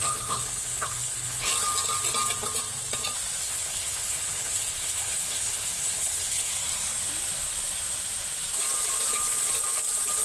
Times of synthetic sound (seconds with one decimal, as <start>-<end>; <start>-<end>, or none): 0.0-1.5; 3.4-6.5